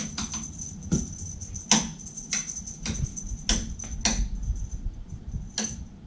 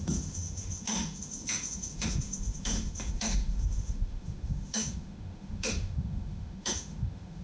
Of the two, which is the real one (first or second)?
first